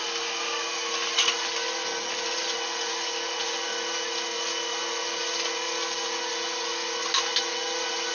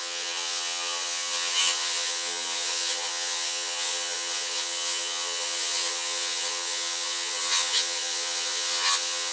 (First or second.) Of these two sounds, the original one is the first